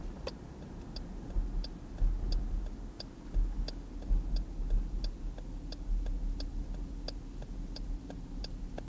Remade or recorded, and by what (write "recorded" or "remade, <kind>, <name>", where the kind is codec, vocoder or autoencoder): recorded